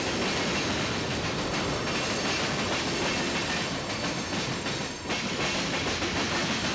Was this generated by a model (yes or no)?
no